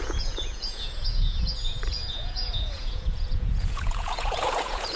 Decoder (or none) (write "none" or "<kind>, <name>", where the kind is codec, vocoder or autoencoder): vocoder, Vocos